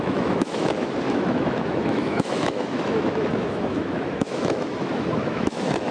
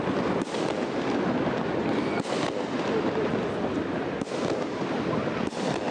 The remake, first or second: first